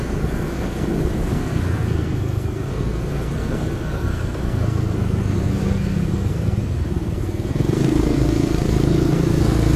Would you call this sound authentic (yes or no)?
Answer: no